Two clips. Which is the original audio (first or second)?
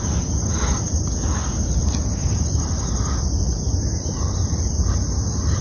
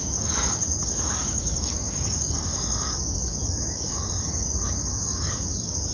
first